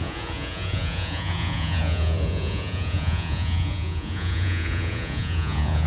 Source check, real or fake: fake